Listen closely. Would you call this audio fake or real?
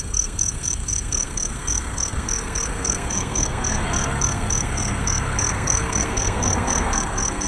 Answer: fake